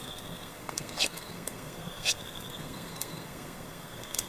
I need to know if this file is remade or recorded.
remade